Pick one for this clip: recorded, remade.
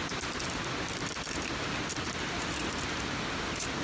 recorded